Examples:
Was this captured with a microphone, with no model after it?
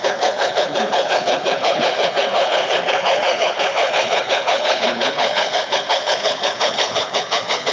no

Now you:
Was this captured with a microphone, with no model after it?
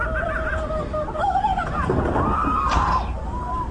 yes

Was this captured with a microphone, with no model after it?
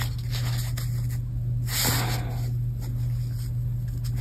yes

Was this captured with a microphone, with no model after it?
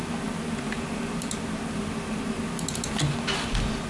yes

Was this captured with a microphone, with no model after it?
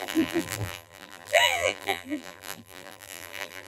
no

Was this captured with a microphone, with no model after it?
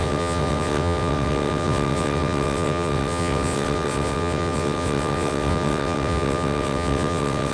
no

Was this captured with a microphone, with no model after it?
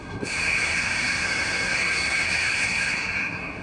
no